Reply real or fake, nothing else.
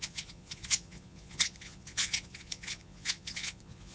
fake